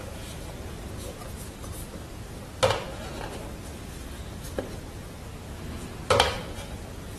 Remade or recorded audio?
recorded